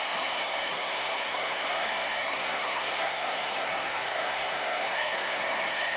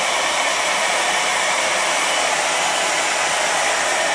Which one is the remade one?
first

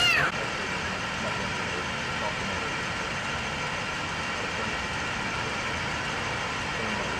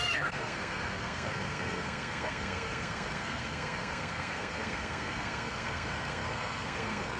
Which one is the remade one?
second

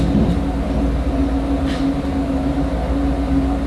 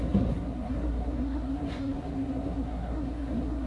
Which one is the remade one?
second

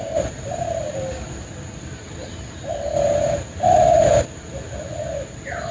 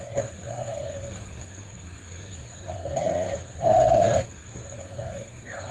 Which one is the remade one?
second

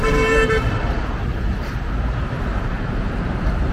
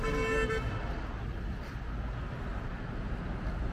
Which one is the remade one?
first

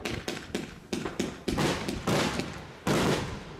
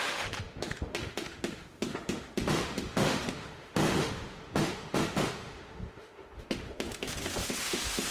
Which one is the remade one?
second